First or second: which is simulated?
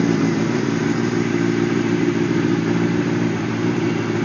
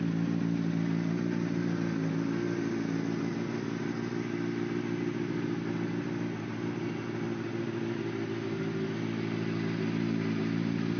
first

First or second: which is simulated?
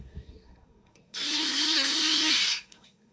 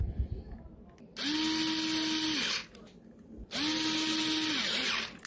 first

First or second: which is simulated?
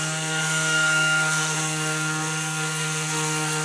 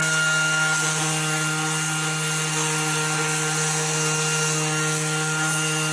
first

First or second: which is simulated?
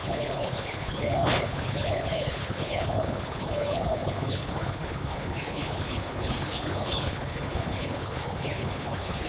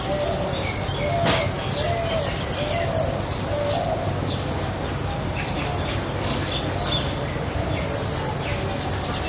first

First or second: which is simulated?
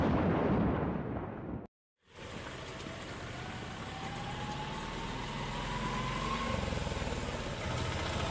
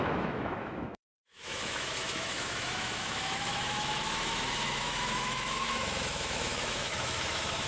second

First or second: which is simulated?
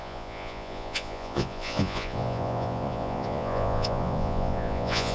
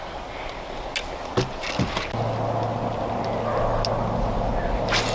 first